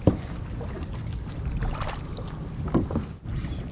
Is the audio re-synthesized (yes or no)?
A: no